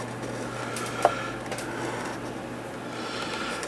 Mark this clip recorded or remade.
recorded